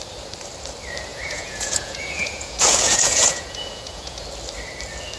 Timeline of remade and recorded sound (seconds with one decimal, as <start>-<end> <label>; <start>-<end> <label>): 0.0-1.1 recorded; 1.1-4.2 remade; 4.2-5.2 recorded